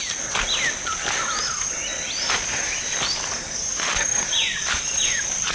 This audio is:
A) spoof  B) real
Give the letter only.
B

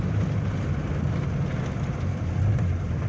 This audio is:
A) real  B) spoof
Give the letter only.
A